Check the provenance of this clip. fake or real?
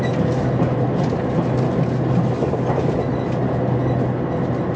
real